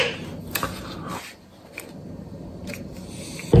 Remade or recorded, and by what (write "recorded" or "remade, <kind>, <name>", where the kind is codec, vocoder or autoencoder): recorded